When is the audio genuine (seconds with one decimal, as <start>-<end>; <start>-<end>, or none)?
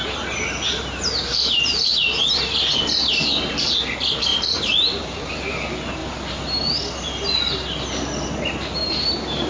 0.0-4.3; 5.6-8.8